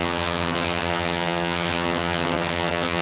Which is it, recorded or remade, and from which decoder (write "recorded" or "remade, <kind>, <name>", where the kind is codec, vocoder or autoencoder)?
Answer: remade, vocoder, HiFi-GAN